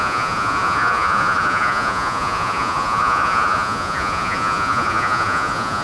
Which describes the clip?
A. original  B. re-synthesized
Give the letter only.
B